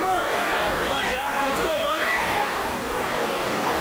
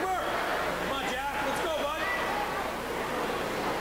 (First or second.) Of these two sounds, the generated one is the first